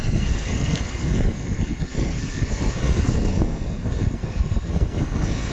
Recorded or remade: remade